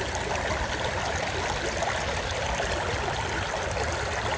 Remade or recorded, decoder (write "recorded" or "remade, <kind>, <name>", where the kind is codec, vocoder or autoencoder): recorded